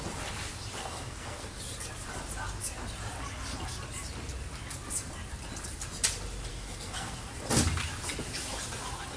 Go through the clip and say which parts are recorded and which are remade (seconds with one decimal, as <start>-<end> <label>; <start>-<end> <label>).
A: 0.0-0.8 recorded; 0.8-1.6 remade; 1.6-6.5 recorded; 6.5-7.3 remade; 7.3-9.2 recorded